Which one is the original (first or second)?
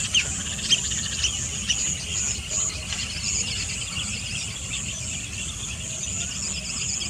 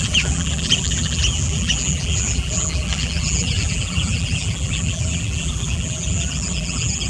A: first